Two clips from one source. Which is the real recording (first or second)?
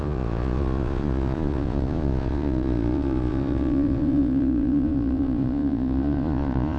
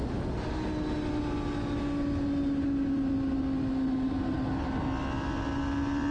second